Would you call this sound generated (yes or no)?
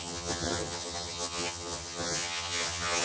yes